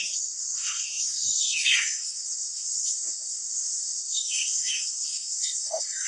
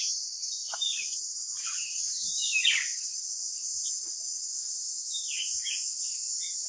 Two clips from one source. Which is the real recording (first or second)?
second